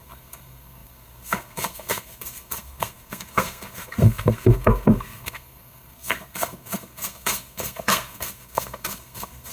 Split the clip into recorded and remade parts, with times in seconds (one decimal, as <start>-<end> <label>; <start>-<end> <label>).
0.0-9.5 remade